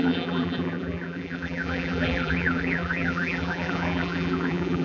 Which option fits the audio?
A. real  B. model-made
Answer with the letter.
B